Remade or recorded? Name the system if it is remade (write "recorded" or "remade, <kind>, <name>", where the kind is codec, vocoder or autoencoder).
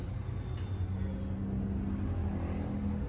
recorded